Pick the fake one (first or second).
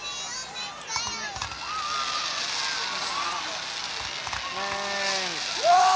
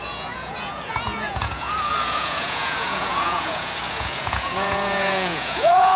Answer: second